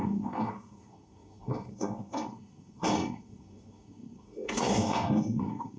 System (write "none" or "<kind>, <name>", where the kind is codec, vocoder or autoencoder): codec, SNAC